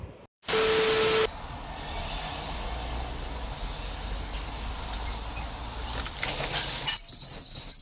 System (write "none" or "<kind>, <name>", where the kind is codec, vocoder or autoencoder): none